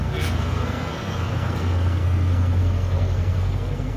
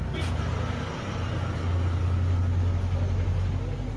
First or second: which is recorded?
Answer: second